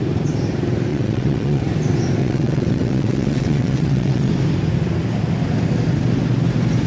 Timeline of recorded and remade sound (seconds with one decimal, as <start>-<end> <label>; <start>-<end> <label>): 0.0-0.9 recorded; 0.9-1.6 remade; 1.6-2.2 recorded; 2.2-4.3 remade; 4.3-6.9 recorded